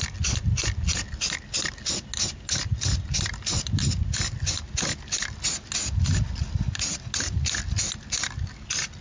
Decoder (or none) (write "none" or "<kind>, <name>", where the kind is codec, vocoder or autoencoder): none